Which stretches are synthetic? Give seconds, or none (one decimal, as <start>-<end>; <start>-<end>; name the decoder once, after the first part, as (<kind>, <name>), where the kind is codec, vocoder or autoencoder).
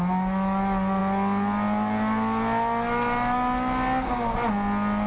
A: none